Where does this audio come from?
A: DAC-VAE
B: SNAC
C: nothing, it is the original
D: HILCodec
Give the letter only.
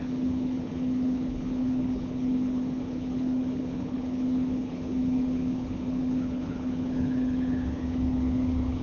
D